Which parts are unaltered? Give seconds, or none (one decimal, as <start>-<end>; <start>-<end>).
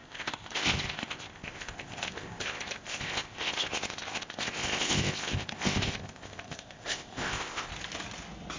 7.7-8.6